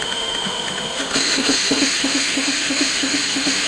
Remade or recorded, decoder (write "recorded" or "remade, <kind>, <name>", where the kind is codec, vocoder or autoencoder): remade, autoencoder, DAC-VAE